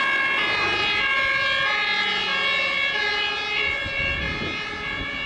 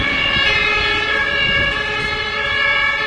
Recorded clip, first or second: first